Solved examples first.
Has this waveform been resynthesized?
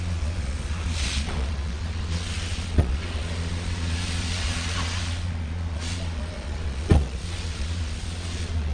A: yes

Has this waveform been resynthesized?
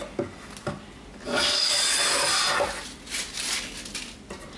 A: no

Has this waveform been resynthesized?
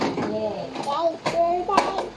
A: no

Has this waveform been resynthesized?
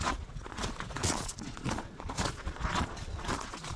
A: yes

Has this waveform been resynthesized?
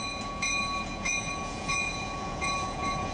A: yes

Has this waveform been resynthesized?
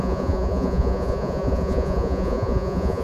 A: yes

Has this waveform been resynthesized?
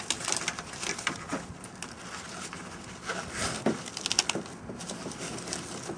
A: no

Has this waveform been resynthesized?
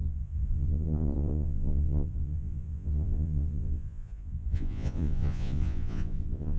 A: yes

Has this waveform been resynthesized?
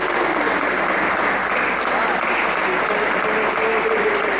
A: no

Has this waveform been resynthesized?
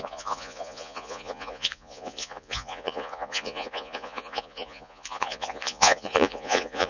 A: yes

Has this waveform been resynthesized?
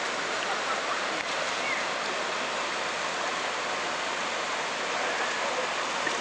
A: no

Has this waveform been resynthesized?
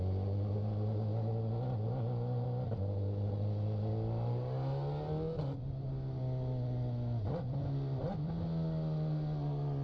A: no